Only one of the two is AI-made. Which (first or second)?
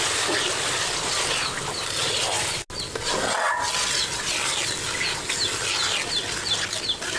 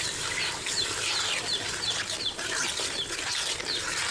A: second